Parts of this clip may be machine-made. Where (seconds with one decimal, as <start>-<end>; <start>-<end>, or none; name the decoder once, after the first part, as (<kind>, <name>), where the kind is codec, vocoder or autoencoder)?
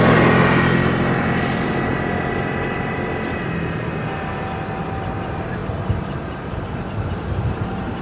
0.0-1.9 (vocoder, BigVGAN v2); 4.8-8.0